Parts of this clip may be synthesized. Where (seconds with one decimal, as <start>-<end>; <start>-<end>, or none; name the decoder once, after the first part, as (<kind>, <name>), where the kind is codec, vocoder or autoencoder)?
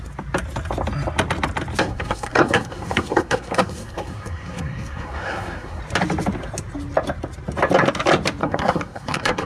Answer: 1.8-5.8 (codec, SNAC); 8.4-9.5